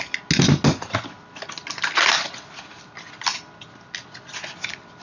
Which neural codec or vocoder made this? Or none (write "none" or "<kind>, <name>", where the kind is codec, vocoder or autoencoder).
none